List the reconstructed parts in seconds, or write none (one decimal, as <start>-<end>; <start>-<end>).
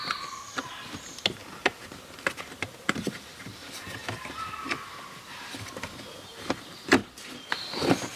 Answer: 0.0-1.4; 2.9-4.0; 4.8-8.2